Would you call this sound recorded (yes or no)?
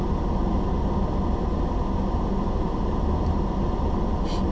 yes